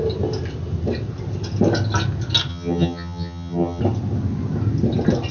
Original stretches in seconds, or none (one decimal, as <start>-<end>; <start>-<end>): 0.0-2.5; 3.8-5.3